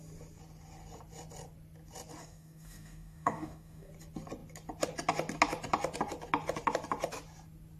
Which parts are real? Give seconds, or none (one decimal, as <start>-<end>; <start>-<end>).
0.0-2.2; 3.9-7.8